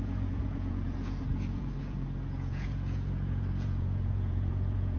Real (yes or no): no